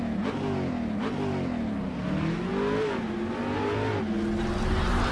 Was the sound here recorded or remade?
recorded